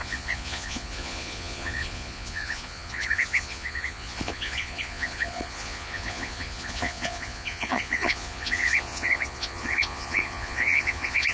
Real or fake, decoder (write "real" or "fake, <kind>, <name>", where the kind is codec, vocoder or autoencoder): fake, vocoder, Vocos